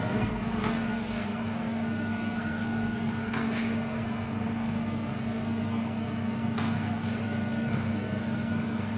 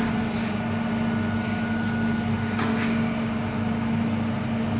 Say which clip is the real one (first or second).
second